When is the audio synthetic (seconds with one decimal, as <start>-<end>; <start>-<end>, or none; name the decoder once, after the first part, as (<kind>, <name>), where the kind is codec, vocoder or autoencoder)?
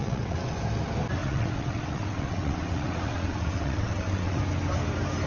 0.0-0.6 (vocoder, WaveNeXt); 1.2-4.4